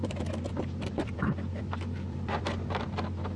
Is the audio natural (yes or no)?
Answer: no